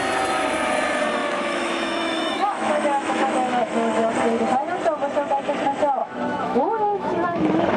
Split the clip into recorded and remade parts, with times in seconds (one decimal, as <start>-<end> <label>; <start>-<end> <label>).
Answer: 0.0-1.2 recorded; 1.2-4.1 remade; 4.1-6.0 recorded; 6.0-7.8 remade